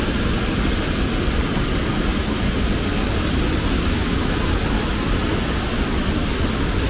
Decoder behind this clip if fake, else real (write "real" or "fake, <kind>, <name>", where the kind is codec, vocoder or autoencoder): real